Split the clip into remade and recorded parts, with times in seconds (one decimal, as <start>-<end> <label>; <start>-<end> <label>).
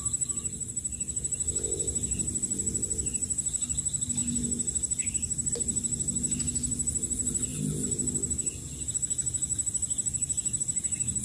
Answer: 0.0-11.2 recorded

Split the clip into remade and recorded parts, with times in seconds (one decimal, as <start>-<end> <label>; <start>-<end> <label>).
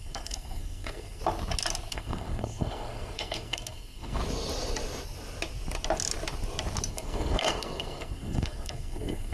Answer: 0.0-1.2 remade; 1.2-1.9 recorded; 1.9-4.2 remade; 4.2-6.9 recorded; 6.9-9.3 remade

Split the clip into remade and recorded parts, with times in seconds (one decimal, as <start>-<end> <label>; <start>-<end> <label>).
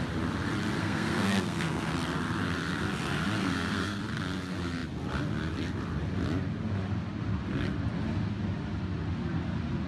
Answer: 0.0-0.8 recorded; 0.8-1.9 remade; 1.9-3.4 recorded; 3.4-4.0 remade; 4.0-9.9 recorded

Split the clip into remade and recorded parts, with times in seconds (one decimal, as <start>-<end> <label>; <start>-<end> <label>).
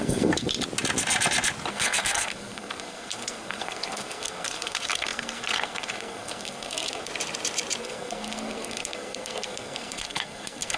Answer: 0.0-0.5 remade; 0.5-1.7 recorded; 1.7-7.1 remade; 7.1-7.8 recorded; 7.8-10.8 remade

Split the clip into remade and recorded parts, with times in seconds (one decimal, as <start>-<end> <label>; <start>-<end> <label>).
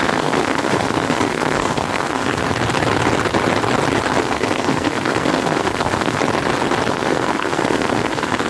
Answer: 0.0-2.4 remade; 2.4-4.2 recorded; 4.2-6.2 remade; 6.2-6.9 recorded; 6.9-8.5 remade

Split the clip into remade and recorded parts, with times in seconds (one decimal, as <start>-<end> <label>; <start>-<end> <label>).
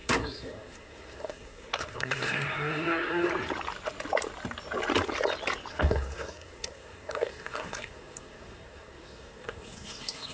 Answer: 0.0-3.3 remade; 3.3-5.7 recorded; 5.7-10.3 remade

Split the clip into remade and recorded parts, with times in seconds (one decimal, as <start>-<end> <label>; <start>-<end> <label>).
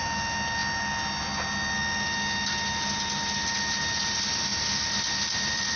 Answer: 0.0-5.8 recorded